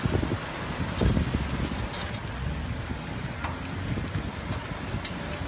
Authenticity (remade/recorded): recorded